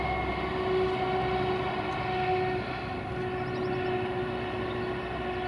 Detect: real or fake real